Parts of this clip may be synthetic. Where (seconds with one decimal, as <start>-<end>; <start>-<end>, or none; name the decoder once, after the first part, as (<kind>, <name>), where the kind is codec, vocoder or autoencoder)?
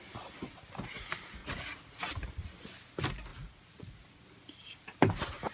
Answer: 1.4-2.0 (vocoder, Vocos); 3.3-4.2